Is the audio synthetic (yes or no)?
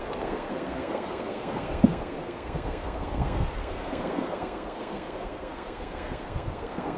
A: yes